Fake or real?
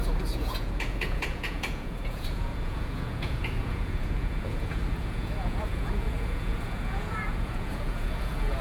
fake